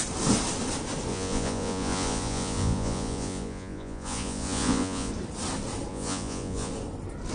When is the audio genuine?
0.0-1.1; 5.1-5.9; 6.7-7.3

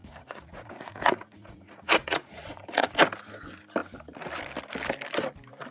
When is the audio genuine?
2.9-5.7

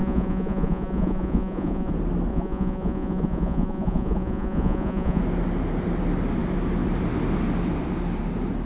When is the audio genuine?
1.9-2.3; 5.2-8.7

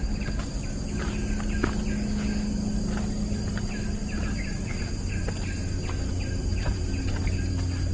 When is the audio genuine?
0.0-4.0; 5.1-6.4; 7.0-7.9

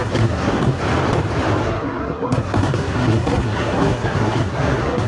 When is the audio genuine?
0.8-1.6